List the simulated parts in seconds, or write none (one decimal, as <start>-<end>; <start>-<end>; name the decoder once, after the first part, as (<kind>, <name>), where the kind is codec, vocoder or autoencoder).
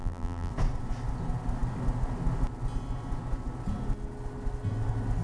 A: 0.0-0.5 (vocoder, BigVGAN v2)